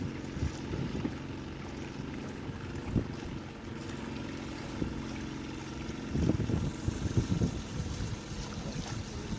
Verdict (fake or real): real